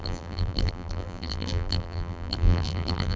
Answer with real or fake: fake